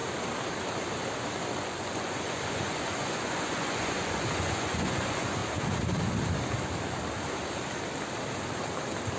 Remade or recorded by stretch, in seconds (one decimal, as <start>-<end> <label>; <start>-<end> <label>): 0.0-1.6 recorded; 1.6-5.4 remade; 5.4-9.2 recorded